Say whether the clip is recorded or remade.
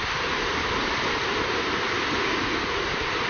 recorded